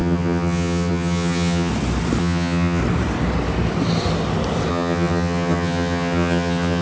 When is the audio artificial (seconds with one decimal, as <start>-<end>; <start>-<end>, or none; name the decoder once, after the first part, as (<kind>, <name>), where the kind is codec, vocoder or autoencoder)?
0.0-1.7 (vocoder, HiFi-GAN); 2.2-2.8; 4.7-6.8